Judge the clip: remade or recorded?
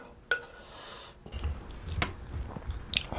recorded